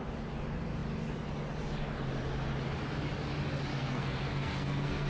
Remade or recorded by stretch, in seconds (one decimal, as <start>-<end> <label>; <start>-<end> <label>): 0.0-3.7 recorded; 3.7-5.1 remade